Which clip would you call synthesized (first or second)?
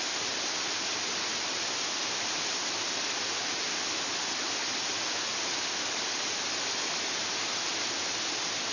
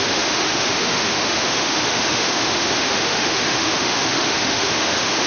second